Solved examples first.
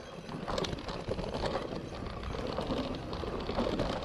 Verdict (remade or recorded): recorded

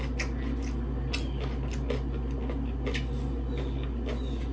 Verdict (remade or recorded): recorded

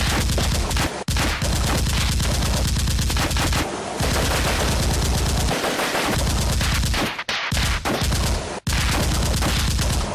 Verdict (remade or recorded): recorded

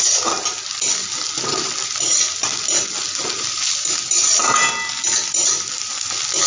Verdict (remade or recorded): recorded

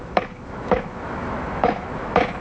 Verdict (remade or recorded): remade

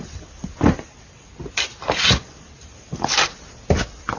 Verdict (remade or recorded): recorded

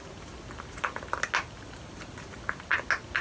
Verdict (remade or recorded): recorded